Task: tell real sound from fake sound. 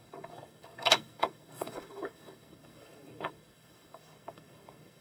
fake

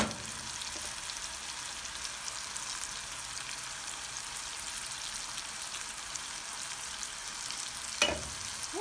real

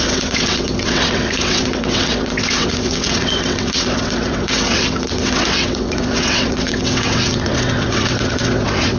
fake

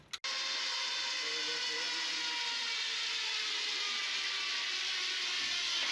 real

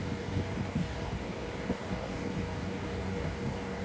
fake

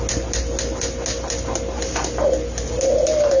real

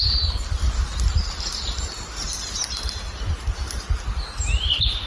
real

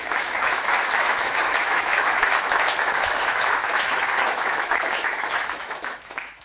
fake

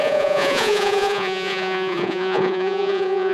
fake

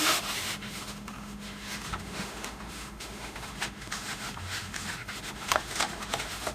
fake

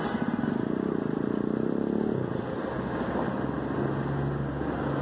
real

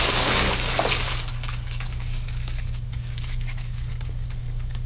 fake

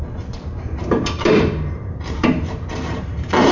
fake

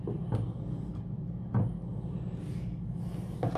real